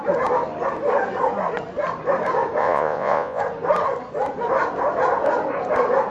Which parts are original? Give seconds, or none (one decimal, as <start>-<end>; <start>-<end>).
0.0-2.6; 3.4-6.1